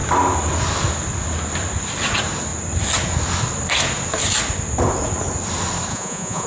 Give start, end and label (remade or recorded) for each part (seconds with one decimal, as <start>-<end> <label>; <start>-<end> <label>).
0.0-5.9 recorded; 5.9-6.5 remade

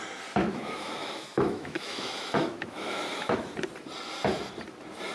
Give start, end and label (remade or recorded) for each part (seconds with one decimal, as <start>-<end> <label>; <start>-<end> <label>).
0.0-0.4 recorded; 0.4-3.5 remade; 3.5-5.1 recorded

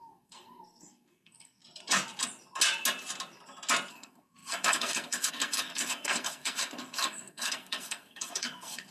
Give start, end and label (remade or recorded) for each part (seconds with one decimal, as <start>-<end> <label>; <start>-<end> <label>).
0.0-1.6 remade; 1.6-3.9 recorded; 3.9-8.9 remade

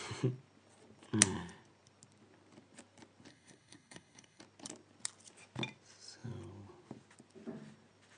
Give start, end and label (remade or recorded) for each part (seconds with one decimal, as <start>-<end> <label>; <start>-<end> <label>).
0.0-3.3 recorded; 3.3-4.4 remade; 4.4-8.2 recorded

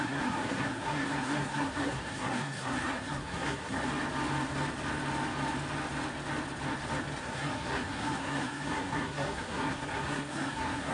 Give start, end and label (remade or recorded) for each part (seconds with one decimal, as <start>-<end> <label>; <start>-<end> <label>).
0.0-3.8 remade; 3.8-7.2 recorded; 7.2-10.9 remade

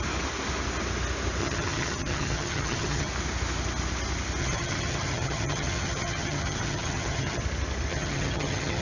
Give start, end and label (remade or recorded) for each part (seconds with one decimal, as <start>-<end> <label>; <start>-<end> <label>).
0.0-1.4 recorded; 1.4-3.1 remade; 3.1-4.4 recorded; 4.4-7.4 remade; 7.4-7.9 recorded; 7.9-8.8 remade

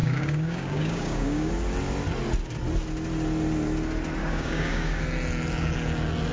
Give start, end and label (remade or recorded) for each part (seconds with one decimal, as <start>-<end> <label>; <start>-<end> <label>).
0.0-1.5 remade; 1.5-4.2 recorded; 4.2-5.0 remade; 5.0-6.3 recorded

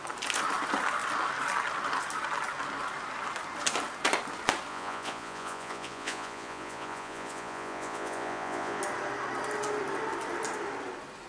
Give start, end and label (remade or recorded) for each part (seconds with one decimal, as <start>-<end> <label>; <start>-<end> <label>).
0.0-4.7 recorded; 4.7-8.8 remade; 8.8-11.3 recorded